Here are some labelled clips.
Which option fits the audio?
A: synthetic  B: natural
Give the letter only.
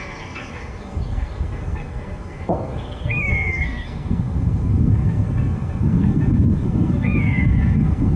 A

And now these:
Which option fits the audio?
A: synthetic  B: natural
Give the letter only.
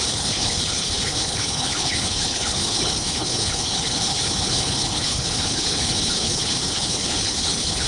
A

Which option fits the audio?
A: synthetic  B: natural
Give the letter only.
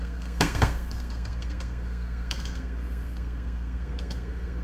A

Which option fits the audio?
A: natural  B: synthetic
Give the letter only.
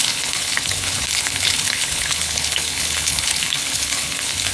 B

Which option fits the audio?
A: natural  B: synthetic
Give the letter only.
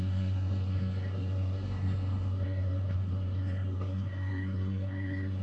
B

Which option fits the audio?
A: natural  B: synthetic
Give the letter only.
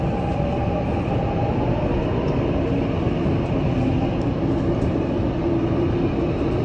A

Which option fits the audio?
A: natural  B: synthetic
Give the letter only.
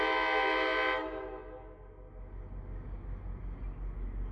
A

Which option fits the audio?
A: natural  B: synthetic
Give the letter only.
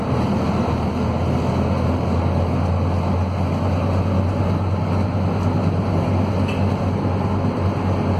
A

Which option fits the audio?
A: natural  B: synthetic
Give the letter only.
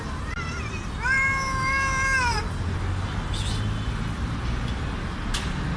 A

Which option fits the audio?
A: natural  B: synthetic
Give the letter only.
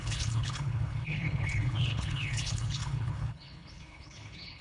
B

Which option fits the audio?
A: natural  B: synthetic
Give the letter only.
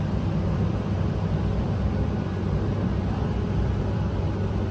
B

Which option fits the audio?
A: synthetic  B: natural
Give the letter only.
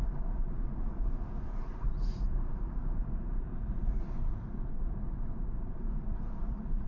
A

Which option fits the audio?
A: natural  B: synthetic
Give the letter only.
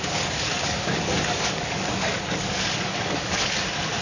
B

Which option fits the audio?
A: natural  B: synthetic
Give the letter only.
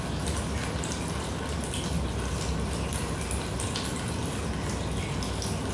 A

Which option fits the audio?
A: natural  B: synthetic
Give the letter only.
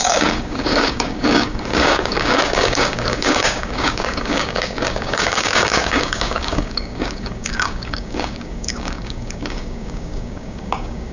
B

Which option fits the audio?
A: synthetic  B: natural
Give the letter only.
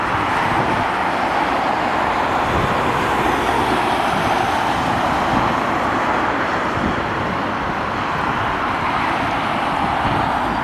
B